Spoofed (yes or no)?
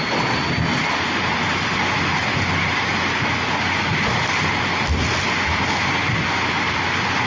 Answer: no